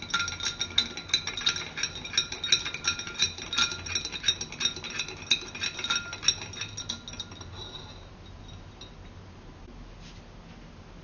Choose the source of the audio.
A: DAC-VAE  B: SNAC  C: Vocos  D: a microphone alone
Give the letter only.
D